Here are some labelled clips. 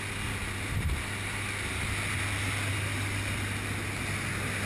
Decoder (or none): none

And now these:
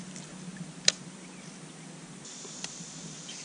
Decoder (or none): none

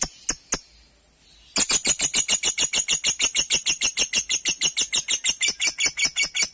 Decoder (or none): none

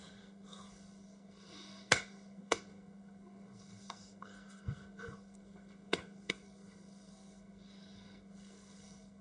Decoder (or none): codec, SNAC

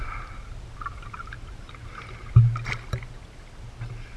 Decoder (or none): none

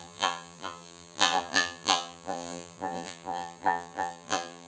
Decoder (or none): vocoder, BigVGAN v2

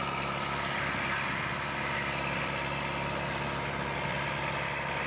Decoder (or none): none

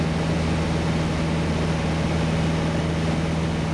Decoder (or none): none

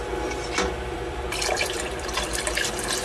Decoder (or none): vocoder, BigVGAN v2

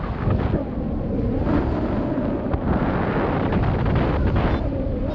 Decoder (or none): none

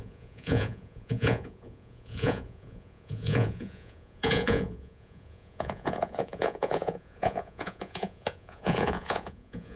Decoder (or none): vocoder, Vocos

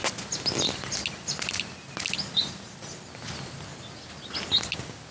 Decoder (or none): none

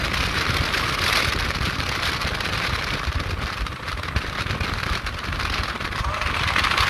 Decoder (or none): none